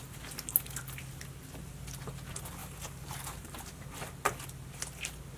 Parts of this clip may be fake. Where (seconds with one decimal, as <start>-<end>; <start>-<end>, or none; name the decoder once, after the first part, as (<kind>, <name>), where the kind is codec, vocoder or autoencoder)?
2.6-3.6 (vocoder, BigVGAN v2)